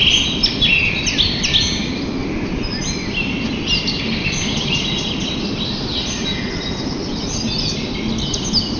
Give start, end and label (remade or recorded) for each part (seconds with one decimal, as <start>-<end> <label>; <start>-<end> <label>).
0.0-8.8 recorded